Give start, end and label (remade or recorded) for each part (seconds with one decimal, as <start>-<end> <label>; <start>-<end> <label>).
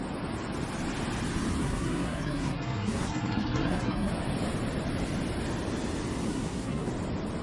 0.0-1.6 recorded; 1.6-4.1 remade; 4.1-6.3 recorded; 6.3-6.9 remade; 6.9-7.4 recorded